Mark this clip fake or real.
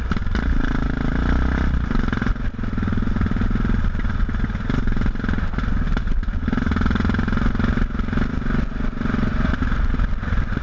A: real